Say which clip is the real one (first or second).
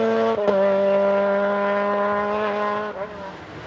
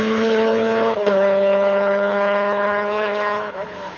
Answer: first